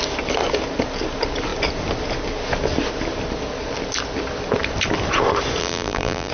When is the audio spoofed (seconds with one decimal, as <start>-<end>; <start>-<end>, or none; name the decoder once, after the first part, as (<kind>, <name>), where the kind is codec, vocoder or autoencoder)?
5.6-6.3 (vocoder, BigVGAN v2)